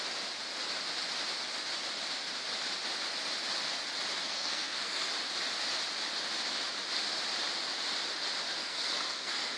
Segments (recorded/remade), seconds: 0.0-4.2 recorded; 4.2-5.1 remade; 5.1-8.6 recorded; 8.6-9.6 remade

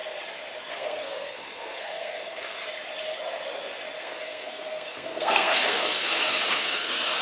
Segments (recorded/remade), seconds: 0.0-0.7 recorded; 0.7-2.6 remade; 2.6-4.0 recorded; 4.0-7.2 remade

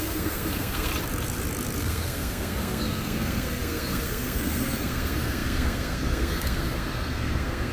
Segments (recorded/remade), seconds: 0.0-0.9 remade; 0.9-1.8 recorded; 1.8-7.7 remade

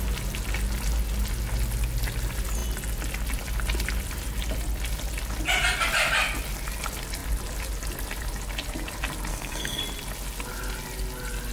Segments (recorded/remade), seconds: 0.0-9.3 recorded; 9.3-9.8 remade; 9.8-11.5 recorded

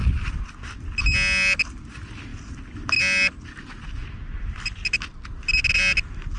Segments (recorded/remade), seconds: 0.0-6.4 recorded

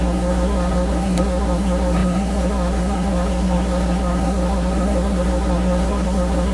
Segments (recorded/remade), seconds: 0.0-6.5 remade

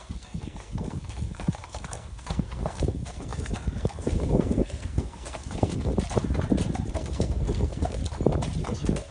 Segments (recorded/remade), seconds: 0.0-5.9 remade; 5.9-6.9 recorded; 6.9-8.0 remade; 8.0-8.6 recorded; 8.6-9.1 remade